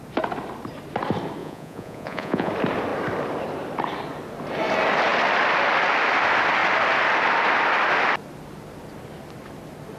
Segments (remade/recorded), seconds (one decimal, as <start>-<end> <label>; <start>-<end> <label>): 0.0-1.4 recorded; 1.4-2.5 remade; 2.5-10.0 recorded